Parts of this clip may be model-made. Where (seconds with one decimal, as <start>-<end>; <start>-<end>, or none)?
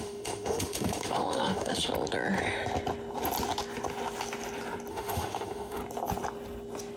0.0-1.9; 4.9-5.8